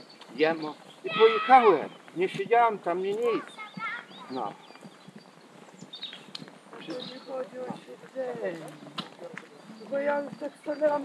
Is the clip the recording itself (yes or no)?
yes